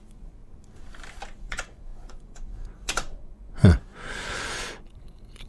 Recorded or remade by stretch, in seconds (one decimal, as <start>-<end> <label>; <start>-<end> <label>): 0.0-0.4 remade; 0.4-1.4 recorded; 1.4-5.5 remade